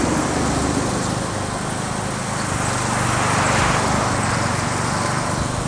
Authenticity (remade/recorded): recorded